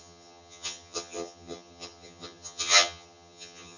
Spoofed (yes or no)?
yes